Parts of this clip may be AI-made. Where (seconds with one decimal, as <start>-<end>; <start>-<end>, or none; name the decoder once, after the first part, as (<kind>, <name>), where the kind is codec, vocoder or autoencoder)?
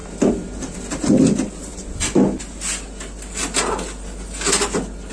none